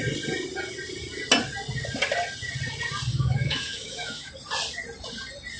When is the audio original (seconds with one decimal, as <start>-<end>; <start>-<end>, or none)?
0.0-3.1; 4.3-5.6